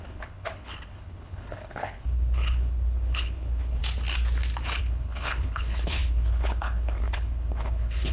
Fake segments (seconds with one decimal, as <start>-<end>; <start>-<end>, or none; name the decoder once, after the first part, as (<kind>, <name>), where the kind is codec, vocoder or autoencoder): 0.0-3.8 (codec, HILCodec); 4.8-8.1

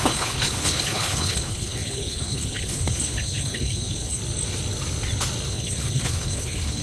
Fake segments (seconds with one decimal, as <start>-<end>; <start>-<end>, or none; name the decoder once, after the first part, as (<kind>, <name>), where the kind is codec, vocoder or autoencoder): 0.0-4.2 (codec, HILCodec); 5.5-6.8

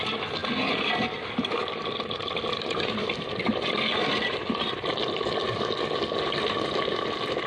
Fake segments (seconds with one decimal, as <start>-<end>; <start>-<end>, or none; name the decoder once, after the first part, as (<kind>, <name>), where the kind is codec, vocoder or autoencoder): none

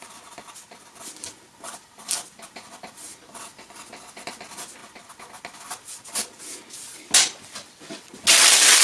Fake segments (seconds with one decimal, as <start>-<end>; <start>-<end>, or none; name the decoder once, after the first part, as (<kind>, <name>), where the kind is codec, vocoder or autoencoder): none

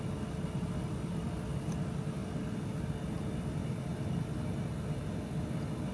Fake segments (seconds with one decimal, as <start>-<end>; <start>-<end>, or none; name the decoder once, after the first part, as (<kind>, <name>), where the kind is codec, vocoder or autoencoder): none

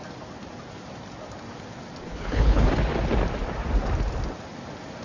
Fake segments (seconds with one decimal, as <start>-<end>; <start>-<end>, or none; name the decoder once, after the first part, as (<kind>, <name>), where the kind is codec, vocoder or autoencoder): 2.1-2.7 (codec, HILCodec)

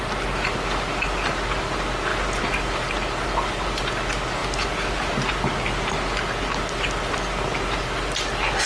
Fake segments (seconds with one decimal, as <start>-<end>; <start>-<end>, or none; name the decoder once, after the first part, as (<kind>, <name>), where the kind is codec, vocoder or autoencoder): none